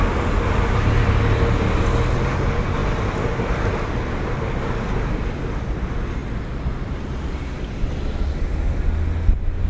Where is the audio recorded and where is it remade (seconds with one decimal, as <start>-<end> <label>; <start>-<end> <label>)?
0.0-2.8 recorded; 2.8-5.8 remade; 5.8-6.2 recorded; 6.2-7.9 remade; 7.9-9.7 recorded